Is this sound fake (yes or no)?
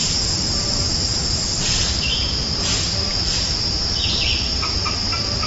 yes